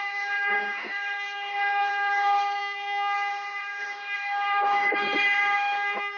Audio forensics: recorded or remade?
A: remade